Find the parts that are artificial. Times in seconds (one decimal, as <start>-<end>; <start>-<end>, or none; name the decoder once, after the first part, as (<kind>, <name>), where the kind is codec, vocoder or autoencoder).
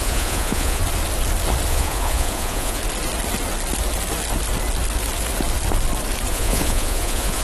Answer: 0.0-0.8 (vocoder, Vocos); 1.7-2.8; 6.3-7.4